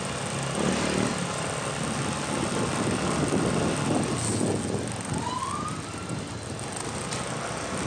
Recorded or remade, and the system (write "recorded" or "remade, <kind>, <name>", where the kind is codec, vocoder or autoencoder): recorded